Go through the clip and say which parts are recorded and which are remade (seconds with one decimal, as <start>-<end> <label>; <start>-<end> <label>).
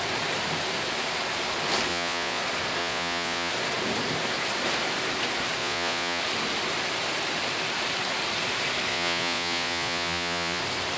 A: 0.0-1.9 recorded; 1.9-2.4 remade; 2.4-2.8 recorded; 2.8-3.5 remade; 3.5-5.6 recorded; 5.6-6.2 remade; 6.2-8.9 recorded; 8.9-10.6 remade; 10.6-11.0 recorded